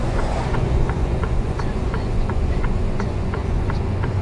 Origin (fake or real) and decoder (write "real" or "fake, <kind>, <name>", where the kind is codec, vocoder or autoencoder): fake, vocoder, Vocos